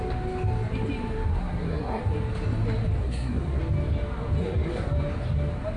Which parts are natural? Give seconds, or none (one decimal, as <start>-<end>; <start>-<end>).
0.0-1.3; 2.0-3.0; 3.6-4.4; 4.9-5.8